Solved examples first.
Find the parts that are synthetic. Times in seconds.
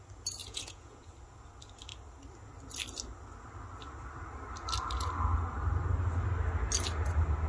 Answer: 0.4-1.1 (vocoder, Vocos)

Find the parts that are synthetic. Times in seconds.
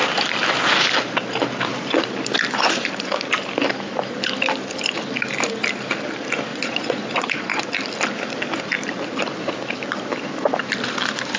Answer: 6.5-7.6 (vocoder, Vocos)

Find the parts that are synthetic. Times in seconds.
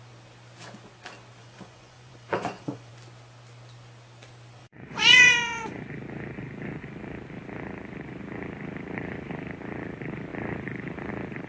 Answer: 1.4-2.9 (vocoder, Vocos); 4.6-5.8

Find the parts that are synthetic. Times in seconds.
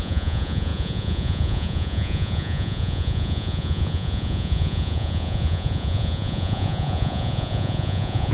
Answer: 0.0-8.3 (vocoder, Vocos)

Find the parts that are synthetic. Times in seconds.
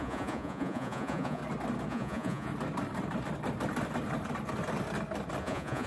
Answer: 0.0-1.4 (vocoder, Vocos); 1.9-2.5; 5.4-5.9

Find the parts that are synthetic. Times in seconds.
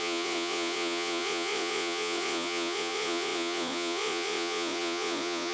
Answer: 0.0-5.5 (vocoder, Vocos)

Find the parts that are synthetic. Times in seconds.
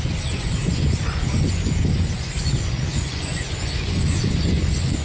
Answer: 0.0-5.0 (vocoder, Vocos)